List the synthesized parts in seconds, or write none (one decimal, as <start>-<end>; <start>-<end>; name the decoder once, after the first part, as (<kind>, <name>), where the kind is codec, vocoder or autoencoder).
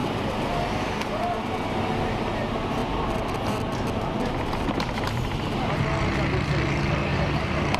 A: 2.8-4.1 (vocoder, BigVGAN v2); 7.1-7.8